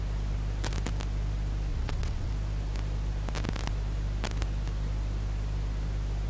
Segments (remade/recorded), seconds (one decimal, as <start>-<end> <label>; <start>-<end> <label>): 0.0-1.7 recorded; 1.7-2.3 remade; 2.3-6.3 recorded